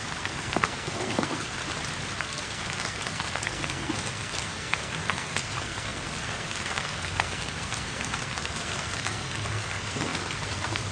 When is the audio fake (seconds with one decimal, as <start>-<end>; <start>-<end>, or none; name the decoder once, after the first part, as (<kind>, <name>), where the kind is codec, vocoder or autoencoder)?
0.0-1.6 (codec, SNAC); 2.2-10.9

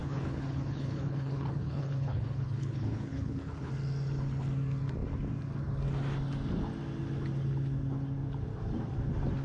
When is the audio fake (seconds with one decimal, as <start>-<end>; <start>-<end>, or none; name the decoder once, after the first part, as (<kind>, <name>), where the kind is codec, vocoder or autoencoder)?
0.0-3.7 (codec, HILCodec)